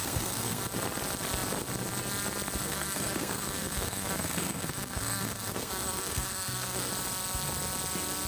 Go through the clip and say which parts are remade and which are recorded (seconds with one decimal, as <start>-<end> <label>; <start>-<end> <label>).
0.0-0.6 remade; 0.6-2.6 recorded; 2.6-6.9 remade; 6.9-8.3 recorded